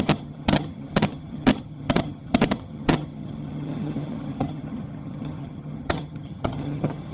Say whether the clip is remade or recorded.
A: remade